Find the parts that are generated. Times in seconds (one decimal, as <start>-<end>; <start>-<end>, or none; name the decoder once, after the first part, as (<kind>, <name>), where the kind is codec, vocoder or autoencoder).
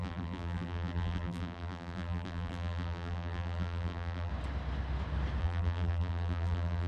0.0-4.3 (vocoder, BigVGAN v2); 5.4-6.9